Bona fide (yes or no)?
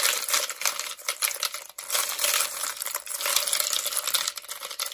yes